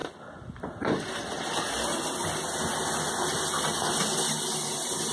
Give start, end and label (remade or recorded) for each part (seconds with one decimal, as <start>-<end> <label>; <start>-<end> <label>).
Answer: 0.0-5.1 recorded